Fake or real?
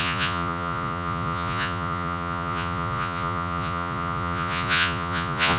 fake